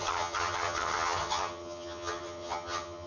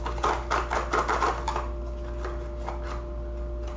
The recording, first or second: second